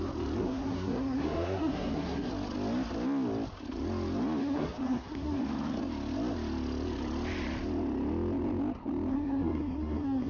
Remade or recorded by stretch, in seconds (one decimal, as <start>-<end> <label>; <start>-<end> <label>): 0.0-0.4 recorded; 0.4-2.3 remade; 2.3-4.4 recorded; 4.4-5.4 remade; 5.4-9.1 recorded; 9.1-10.3 remade

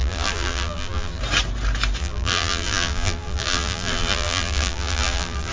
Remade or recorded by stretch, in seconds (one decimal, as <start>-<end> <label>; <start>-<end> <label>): 0.0-1.2 remade; 1.2-2.0 recorded; 2.0-5.5 remade

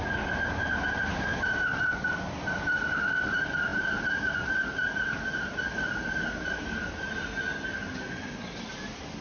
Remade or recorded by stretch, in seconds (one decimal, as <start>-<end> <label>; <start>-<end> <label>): 0.0-9.2 recorded

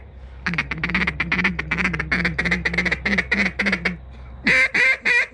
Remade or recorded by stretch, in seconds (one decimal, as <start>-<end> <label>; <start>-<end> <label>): 0.0-1.5 remade; 1.5-4.7 recorded; 4.7-5.3 remade